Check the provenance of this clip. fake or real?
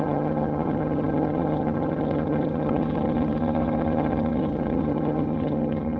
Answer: fake